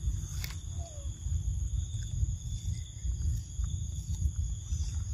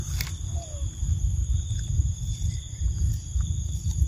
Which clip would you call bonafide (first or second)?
first